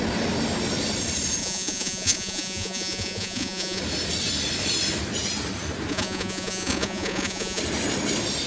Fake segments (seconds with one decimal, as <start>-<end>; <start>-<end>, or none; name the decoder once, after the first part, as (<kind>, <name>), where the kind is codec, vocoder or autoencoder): 1.4-3.8 (vocoder, Vocos); 5.9-7.6

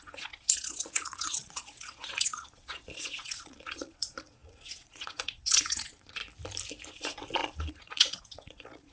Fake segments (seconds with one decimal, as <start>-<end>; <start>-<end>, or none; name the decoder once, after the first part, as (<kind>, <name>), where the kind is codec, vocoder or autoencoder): 0.0-6.2 (vocoder, Vocos); 6.9-8.9

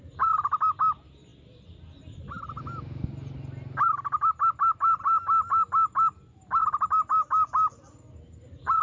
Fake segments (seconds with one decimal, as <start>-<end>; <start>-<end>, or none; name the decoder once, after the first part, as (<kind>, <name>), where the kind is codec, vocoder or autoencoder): none

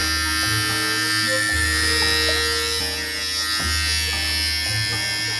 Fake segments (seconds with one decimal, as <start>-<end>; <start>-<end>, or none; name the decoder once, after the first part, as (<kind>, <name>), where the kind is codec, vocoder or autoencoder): none